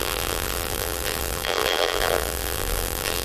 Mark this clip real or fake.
fake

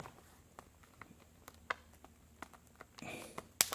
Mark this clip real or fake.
real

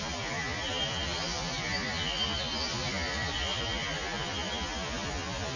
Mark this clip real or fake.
fake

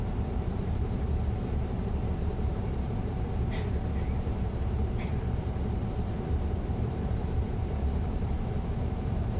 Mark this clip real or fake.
fake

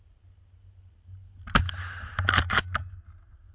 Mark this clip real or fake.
real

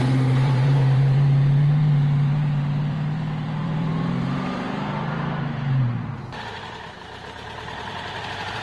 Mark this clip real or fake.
fake